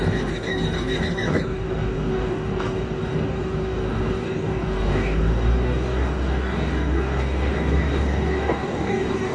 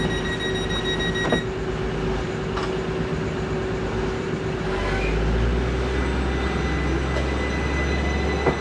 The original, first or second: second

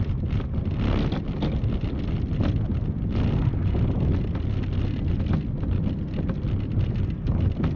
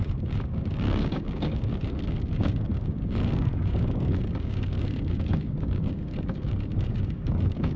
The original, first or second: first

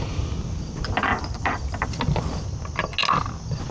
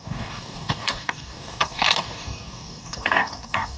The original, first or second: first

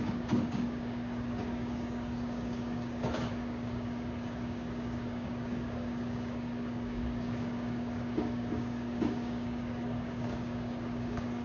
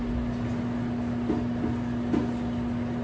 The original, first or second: second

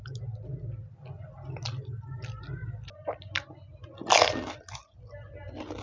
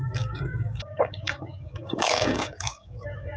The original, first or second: first